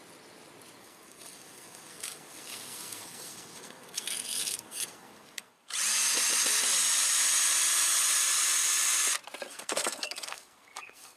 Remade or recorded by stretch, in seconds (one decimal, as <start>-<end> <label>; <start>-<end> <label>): 0.0-0.8 recorded; 0.8-5.7 remade; 5.7-9.5 recorded; 9.5-11.2 remade